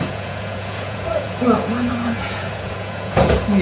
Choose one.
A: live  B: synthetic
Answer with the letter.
B